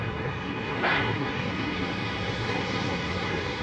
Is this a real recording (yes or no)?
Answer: no